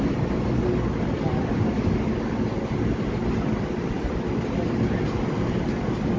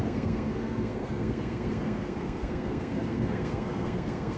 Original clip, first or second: first